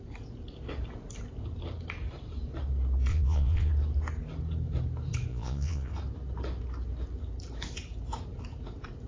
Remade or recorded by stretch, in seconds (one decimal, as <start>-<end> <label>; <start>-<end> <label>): 0.0-3.1 recorded; 3.1-3.7 remade; 3.7-5.3 recorded; 5.3-5.9 remade; 5.9-9.1 recorded